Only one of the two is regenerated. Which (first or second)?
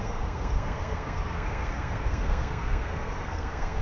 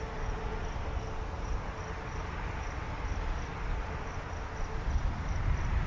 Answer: first